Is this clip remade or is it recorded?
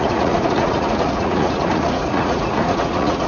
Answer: remade